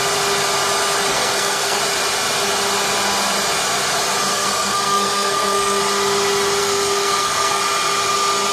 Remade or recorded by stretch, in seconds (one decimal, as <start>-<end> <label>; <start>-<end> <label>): 0.0-1.1 recorded; 1.1-1.8 remade; 1.8-4.3 recorded; 4.3-5.8 remade; 5.8-6.6 recorded; 6.6-7.6 remade; 7.6-8.5 recorded